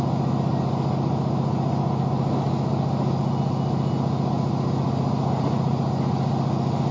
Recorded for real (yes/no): yes